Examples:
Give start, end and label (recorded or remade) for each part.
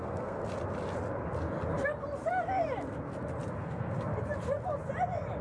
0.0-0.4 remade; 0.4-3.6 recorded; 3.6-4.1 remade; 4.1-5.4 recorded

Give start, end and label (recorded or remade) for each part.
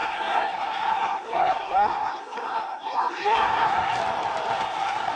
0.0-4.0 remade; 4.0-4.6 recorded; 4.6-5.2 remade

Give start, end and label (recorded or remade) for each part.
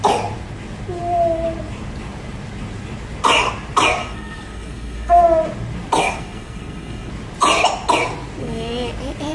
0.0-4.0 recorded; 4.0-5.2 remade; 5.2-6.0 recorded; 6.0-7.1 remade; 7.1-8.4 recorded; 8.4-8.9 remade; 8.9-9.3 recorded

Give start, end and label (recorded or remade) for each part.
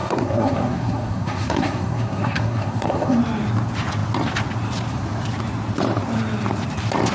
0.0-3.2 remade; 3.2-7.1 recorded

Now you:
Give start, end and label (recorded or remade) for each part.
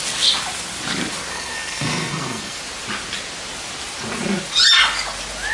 0.0-1.3 recorded; 1.3-2.6 remade; 2.6-5.5 recorded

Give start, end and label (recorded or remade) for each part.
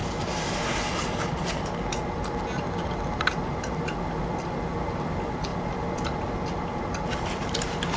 0.0-8.0 recorded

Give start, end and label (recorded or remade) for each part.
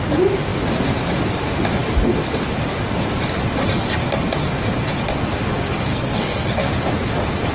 0.0-5.9 recorded; 5.9-6.7 remade; 6.7-7.5 recorded